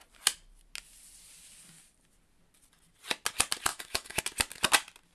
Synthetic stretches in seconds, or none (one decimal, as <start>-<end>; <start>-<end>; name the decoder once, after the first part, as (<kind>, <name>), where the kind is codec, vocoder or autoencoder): 3.7-4.2 (autoencoder, DAC-VAE)